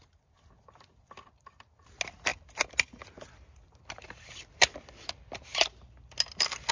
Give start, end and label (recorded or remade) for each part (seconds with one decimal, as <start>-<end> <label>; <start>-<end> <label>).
0.0-6.7 recorded